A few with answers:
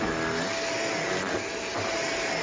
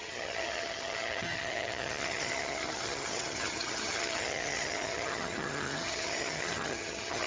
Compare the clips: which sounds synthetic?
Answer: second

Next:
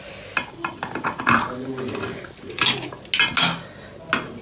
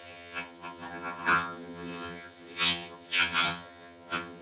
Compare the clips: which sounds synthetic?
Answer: second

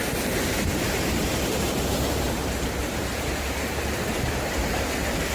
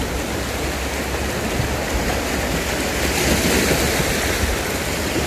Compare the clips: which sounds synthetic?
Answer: first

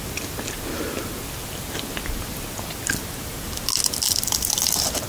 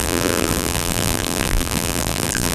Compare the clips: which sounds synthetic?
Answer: second